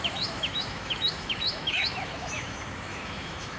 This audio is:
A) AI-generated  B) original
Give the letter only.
A